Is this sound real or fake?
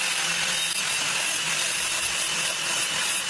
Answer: real